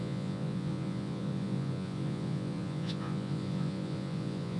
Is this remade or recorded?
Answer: remade